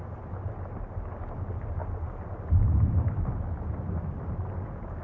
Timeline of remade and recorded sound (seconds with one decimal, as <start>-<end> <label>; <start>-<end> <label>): 0.0-5.0 recorded